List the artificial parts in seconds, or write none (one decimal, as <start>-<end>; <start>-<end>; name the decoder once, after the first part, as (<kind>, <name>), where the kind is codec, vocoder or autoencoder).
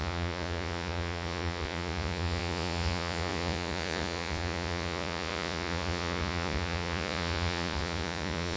0.0-8.6 (vocoder, Vocos)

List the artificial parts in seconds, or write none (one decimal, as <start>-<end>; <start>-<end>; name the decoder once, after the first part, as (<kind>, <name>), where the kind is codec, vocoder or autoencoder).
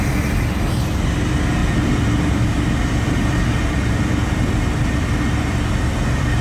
none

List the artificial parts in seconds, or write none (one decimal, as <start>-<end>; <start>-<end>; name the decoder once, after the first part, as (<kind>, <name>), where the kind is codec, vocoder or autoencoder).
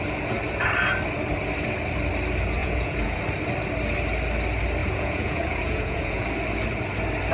2.6-3.2 (vocoder, Vocos); 4.8-6.2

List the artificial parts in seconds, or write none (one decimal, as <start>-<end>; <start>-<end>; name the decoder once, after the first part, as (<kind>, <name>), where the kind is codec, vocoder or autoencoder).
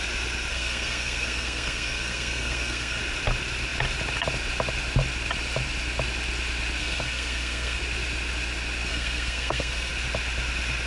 0.5-3.0 (codec, SNAC); 6.8-7.8; 8.9-9.9